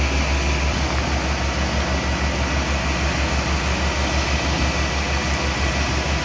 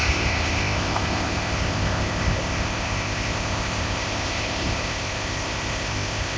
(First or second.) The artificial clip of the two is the second